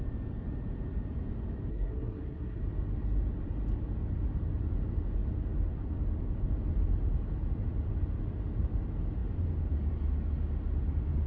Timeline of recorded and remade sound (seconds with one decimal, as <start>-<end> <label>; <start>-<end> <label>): 0.0-1.7 recorded; 1.7-2.6 remade; 2.6-11.3 recorded